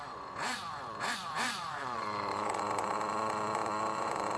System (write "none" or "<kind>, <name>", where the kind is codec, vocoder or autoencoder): vocoder, Vocos